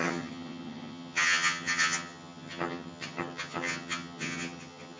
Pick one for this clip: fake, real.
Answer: fake